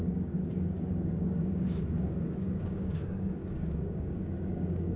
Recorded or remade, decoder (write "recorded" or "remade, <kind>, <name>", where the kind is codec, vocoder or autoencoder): remade, codec, DAC